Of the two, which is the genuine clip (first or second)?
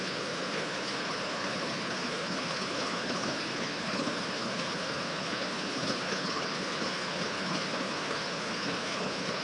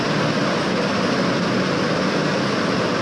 second